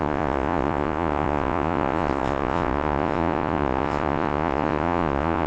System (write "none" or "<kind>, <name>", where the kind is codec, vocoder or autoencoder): vocoder, Vocos